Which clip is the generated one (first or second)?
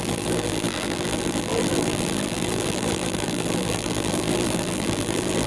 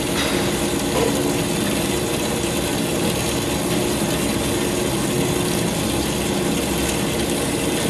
first